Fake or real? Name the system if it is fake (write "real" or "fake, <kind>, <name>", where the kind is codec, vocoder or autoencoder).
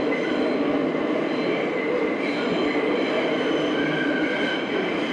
real